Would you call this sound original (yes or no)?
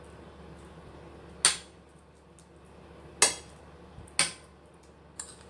yes